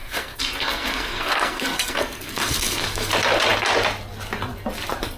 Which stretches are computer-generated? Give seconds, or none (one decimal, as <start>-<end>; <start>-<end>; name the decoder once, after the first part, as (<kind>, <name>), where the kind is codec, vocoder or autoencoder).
0.0-3.1 (codec, SNAC)